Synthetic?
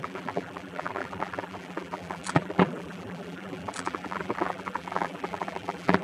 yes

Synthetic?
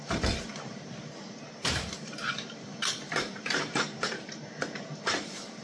yes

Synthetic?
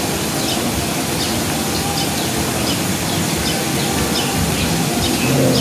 no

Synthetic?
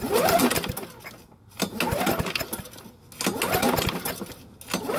no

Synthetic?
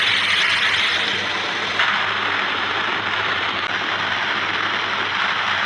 no